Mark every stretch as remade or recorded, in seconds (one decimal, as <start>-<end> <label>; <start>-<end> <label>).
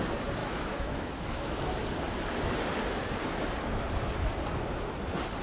0.0-0.4 recorded; 0.4-1.6 remade; 1.6-5.4 recorded